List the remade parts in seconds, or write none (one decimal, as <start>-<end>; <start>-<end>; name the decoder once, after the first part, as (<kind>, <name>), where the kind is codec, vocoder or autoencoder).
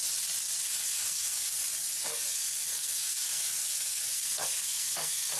0.6-1.6 (codec, SNAC); 2.1-5.4